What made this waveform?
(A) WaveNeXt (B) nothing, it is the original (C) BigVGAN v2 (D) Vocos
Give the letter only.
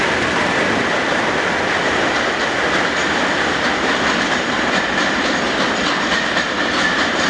C